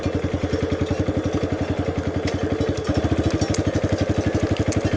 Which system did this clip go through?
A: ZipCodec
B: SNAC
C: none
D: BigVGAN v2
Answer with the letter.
C